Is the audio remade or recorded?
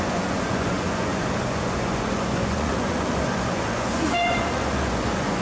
remade